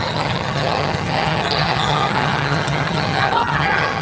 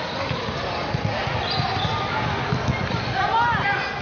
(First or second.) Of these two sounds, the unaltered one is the second